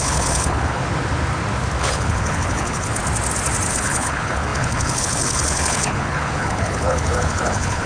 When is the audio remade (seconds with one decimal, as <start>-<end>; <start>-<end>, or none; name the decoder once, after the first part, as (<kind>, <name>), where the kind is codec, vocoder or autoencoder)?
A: 0.0-0.8 (codec, HILCodec); 1.8-3.0; 3.7-7.9